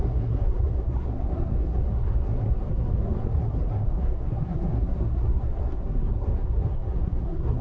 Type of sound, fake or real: fake